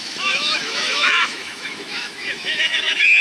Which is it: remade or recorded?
remade